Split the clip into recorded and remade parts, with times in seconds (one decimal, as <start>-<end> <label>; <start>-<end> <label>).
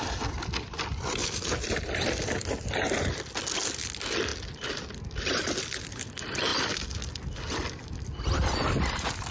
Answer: 0.0-1.2 recorded; 1.2-3.2 remade; 3.2-6.5 recorded; 6.5-9.3 remade